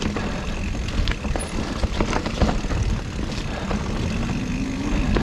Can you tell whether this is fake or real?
real